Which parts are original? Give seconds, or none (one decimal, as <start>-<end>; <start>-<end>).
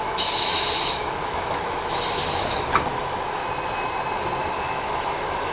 3.4-4.5